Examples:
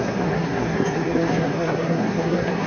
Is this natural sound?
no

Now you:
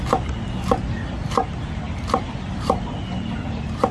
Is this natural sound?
yes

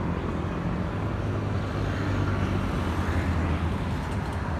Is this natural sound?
yes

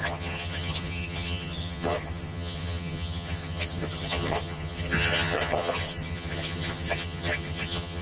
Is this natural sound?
no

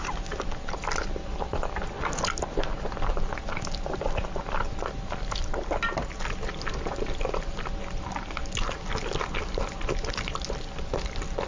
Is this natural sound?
yes